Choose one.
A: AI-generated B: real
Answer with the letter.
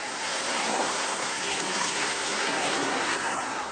A